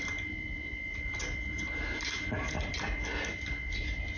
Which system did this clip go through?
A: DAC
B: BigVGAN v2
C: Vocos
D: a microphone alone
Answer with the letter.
D